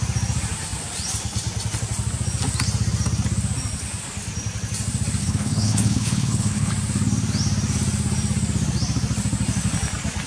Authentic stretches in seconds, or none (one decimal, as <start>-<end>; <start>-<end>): 0.0-5.2; 6.7-10.3